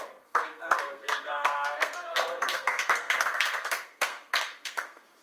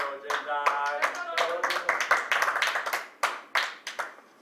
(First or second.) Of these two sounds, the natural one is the second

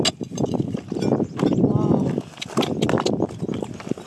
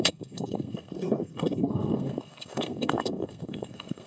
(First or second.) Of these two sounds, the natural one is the first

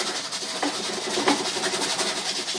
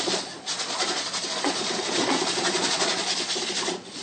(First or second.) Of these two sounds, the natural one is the first